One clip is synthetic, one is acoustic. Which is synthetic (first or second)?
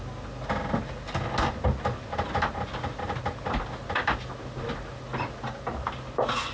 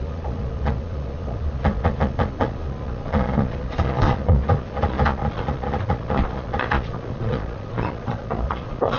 second